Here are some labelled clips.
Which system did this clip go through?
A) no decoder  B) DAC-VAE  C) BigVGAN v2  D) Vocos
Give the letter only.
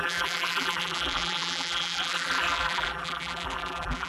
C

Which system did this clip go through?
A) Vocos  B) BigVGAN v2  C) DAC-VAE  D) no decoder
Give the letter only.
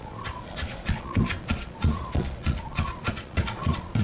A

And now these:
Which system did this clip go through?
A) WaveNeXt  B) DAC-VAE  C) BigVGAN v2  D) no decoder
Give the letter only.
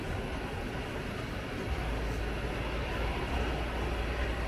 D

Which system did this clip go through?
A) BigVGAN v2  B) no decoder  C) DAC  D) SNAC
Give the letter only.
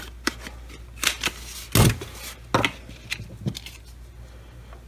B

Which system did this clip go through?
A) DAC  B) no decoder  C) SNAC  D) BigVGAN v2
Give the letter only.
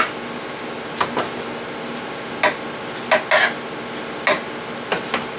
B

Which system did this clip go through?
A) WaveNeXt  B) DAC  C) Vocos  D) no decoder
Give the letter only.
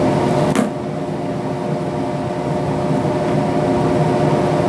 D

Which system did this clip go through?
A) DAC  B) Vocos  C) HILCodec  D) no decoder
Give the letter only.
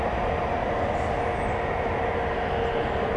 D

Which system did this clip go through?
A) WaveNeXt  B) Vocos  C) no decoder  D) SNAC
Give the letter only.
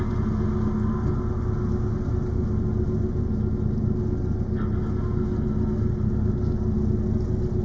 C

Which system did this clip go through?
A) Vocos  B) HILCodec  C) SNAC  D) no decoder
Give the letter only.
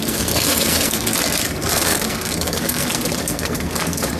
C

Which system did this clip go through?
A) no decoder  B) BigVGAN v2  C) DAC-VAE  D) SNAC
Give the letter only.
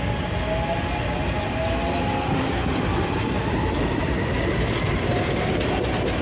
A